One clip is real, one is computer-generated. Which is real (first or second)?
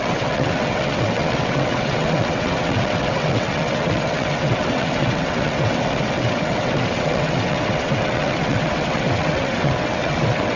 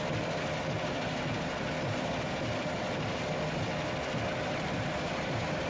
second